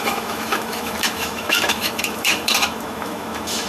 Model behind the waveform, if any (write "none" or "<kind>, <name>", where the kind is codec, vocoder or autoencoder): autoencoder, DAC-VAE